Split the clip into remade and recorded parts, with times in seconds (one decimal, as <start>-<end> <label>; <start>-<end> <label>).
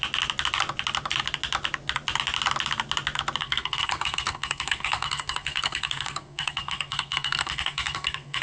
0.0-3.4 recorded; 3.4-8.4 remade